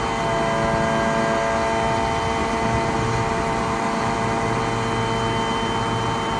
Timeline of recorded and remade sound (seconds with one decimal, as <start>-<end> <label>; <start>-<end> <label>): 0.0-2.4 recorded; 2.4-4.6 remade; 4.6-6.4 recorded